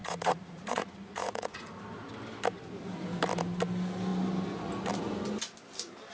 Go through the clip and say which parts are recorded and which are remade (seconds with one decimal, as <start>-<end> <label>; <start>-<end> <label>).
0.0-2.1 remade; 2.1-6.1 recorded